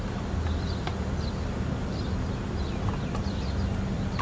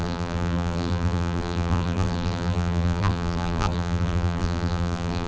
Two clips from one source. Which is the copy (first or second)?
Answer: second